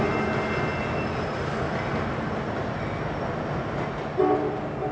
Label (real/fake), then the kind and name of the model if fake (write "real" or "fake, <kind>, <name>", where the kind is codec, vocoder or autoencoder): real